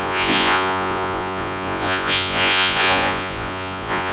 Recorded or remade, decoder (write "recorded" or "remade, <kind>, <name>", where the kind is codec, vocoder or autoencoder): remade, vocoder, Vocos